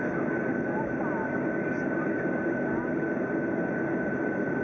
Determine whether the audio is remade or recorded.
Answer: recorded